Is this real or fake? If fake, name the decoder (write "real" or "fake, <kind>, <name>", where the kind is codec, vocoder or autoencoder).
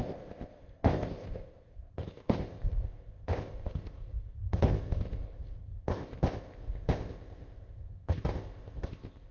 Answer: fake, codec, ZipCodec